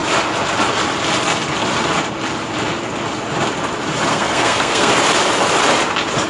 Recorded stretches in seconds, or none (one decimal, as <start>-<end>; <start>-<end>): 0.0-4.1; 4.9-6.3